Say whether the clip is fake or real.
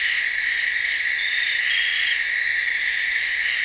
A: real